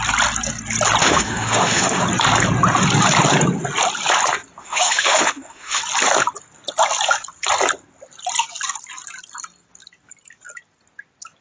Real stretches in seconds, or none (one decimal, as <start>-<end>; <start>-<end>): 0.0-1.0; 2.0-4.6; 5.8-11.4